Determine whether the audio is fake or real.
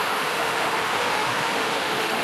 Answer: fake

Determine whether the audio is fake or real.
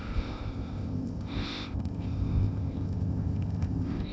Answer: fake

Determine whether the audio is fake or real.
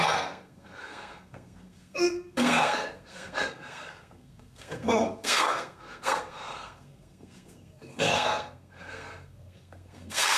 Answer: fake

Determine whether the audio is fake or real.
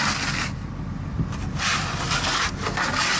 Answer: real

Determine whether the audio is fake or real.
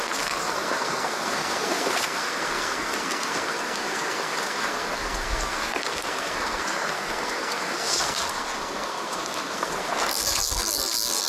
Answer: fake